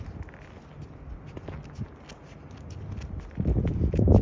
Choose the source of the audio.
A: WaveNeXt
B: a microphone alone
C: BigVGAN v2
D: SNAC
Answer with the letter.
B